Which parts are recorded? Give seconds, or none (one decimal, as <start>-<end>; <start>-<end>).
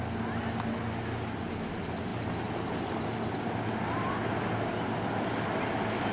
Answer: 0.0-6.1